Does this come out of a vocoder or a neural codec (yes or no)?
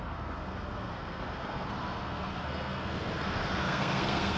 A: yes